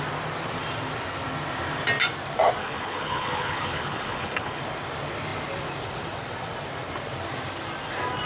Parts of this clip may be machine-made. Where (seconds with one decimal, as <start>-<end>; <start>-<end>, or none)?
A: 2.6-4.6

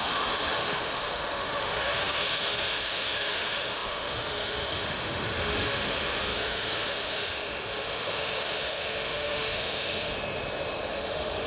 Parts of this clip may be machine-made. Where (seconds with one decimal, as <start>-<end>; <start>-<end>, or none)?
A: 0.0-10.1; 10.9-11.5

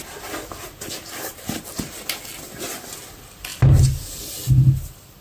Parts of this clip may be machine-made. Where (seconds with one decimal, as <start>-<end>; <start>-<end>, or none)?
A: none

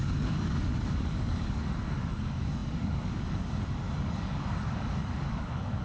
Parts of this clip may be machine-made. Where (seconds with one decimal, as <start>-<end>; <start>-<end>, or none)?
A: 0.0-5.8

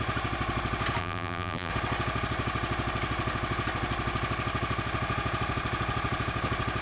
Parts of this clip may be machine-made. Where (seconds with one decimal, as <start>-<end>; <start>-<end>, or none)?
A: 1.0-1.7

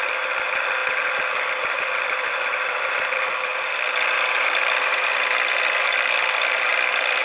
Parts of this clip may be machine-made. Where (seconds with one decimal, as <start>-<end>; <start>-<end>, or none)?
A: 0.0-7.2

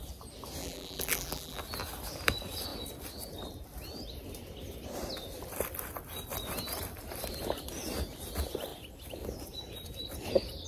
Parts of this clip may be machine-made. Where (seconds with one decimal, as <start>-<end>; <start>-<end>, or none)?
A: 0.6-1.6